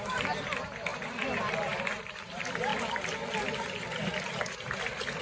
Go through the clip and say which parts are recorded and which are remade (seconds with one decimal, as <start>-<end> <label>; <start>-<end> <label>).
0.0-5.2 recorded